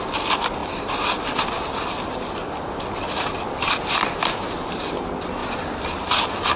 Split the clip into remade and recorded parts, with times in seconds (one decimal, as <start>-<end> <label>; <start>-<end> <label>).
0.0-6.6 recorded